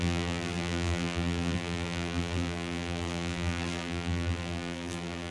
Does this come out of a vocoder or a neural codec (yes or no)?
yes